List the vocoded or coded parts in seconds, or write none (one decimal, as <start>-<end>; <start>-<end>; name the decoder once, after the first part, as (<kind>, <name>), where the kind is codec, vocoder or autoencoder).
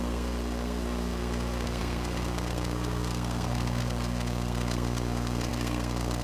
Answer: 0.0-6.2 (codec, SNAC)